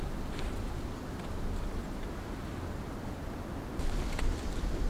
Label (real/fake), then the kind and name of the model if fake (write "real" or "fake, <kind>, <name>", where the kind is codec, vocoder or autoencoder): real